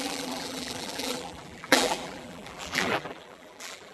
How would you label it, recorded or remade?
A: remade